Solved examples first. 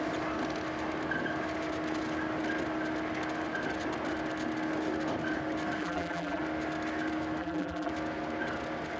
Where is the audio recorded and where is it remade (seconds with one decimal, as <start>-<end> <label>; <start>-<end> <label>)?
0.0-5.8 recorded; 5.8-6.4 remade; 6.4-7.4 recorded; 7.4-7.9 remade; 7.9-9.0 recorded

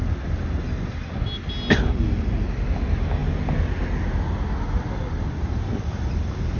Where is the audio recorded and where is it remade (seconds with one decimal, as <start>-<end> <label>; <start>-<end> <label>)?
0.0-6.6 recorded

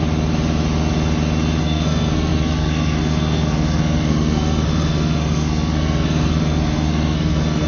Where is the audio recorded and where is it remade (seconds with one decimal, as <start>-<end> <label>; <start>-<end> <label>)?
0.0-1.6 recorded; 1.6-7.7 remade

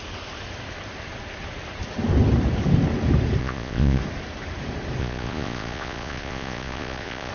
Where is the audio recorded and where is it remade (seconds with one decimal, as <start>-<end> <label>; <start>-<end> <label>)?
0.0-3.4 recorded; 3.4-4.0 remade; 4.0-5.0 recorded; 5.0-7.3 remade

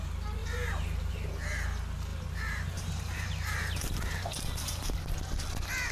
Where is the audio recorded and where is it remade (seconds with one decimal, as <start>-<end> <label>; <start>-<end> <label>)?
0.0-0.4 recorded; 0.4-1.1 remade; 1.1-2.1 recorded; 2.1-4.9 remade; 4.9-5.9 recorded

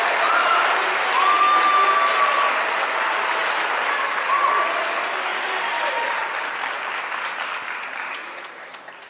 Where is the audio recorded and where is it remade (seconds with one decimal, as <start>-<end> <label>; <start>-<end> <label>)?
0.0-0.4 recorded; 0.4-1.0 remade; 1.0-5.3 recorded; 5.3-6.8 remade; 6.8-9.1 recorded

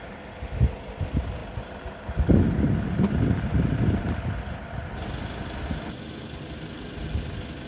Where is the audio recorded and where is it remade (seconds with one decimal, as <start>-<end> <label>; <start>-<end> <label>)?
0.0-7.7 recorded

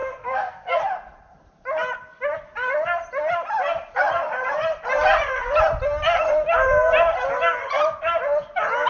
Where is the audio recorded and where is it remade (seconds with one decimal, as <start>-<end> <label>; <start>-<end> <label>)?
0.0-0.8 remade; 0.8-8.9 recorded